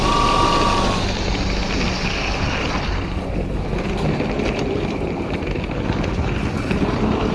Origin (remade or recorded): recorded